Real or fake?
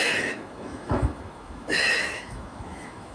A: fake